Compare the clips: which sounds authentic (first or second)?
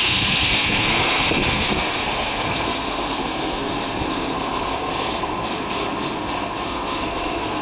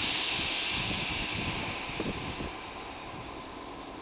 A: second